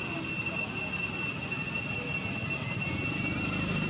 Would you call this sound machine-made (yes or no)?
no